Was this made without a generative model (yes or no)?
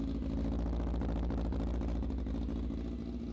yes